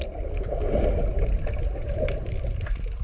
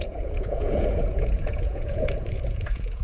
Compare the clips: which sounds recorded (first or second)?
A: first